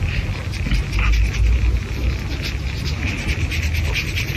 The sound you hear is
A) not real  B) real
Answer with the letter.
B